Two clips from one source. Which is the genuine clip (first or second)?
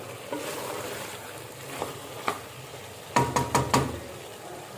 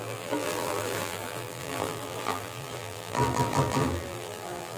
first